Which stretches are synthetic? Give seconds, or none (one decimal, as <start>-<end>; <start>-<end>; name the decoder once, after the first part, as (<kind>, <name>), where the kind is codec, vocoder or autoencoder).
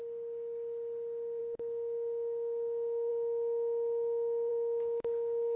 1.4-3.1 (codec, DAC); 4.5-5.6